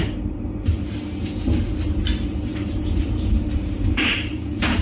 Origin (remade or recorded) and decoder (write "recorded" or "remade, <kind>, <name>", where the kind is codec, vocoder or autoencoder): remade, vocoder, BigVGAN v2